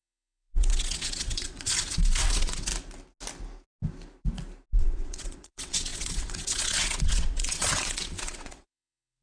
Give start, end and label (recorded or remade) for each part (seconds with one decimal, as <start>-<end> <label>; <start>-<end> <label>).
0.0-2.7 remade; 2.7-4.8 recorded; 4.8-9.2 remade